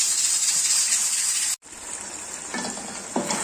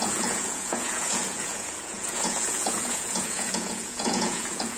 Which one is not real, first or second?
second